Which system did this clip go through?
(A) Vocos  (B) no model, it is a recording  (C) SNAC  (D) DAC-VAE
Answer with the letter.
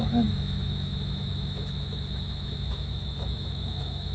D